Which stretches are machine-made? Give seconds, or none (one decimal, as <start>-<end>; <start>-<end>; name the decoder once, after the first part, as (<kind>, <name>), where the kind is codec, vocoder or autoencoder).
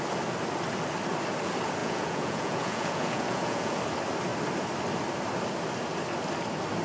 1.8-3.8 (vocoder, Vocos)